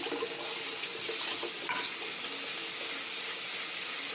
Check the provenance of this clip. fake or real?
real